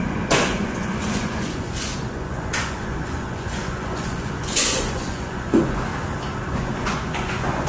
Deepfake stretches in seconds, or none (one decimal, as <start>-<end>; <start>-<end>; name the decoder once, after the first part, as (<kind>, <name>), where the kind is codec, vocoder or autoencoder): 0.0-5.9 (vocoder, Vocos); 6.5-7.7

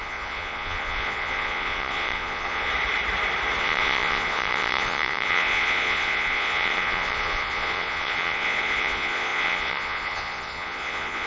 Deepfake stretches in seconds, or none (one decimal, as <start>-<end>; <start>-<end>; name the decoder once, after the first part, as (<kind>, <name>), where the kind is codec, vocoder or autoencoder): 0.0-2.7 (vocoder, Vocos); 3.6-11.3

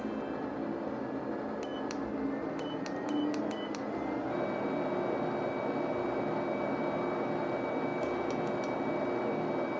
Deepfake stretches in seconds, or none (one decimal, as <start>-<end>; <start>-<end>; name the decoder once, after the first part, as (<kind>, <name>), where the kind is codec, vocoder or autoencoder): none

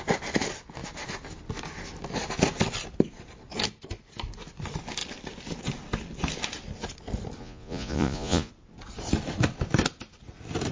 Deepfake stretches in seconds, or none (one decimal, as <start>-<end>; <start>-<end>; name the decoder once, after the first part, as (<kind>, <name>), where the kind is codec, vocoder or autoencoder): 7.4-8.5 (vocoder, Vocos)

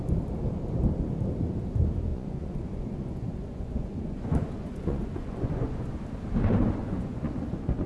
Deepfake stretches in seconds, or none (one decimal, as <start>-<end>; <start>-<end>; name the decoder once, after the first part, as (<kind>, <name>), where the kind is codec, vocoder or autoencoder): 2.1-5.9 (vocoder, Vocos); 6.8-7.9